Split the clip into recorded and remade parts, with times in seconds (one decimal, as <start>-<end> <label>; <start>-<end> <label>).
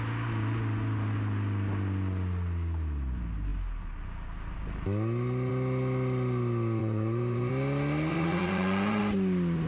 0.0-6.8 recorded; 6.8-7.5 remade; 7.5-8.1 recorded; 8.1-9.0 remade; 9.0-9.7 recorded